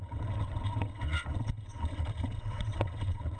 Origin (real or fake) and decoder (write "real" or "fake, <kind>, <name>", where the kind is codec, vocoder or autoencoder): fake, vocoder, WaveNeXt